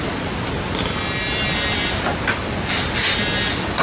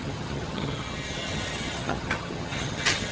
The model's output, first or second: second